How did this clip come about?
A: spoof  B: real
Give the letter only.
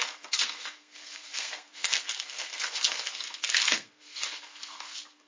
A